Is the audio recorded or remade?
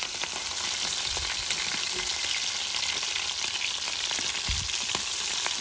recorded